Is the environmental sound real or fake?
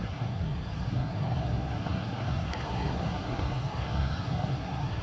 fake